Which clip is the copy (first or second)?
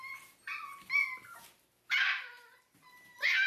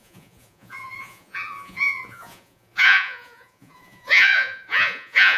second